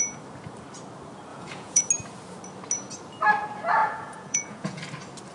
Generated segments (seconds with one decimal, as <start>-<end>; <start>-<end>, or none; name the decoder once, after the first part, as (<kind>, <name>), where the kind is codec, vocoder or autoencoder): 1.3-1.8 (vocoder, Vocos); 3.8-4.8